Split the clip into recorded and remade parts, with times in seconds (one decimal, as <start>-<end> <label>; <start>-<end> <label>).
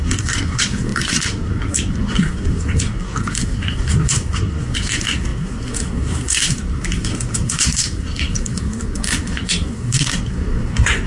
0.0-11.1 remade